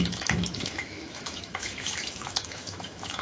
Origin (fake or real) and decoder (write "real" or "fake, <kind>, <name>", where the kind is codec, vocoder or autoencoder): fake, autoencoder, DAC-VAE